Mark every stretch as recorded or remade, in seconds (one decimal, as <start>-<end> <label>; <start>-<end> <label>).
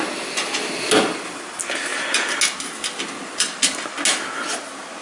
0.0-5.0 recorded